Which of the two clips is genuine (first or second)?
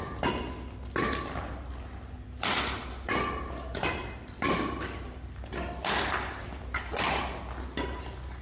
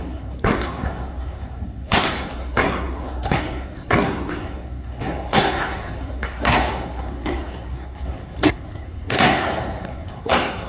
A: first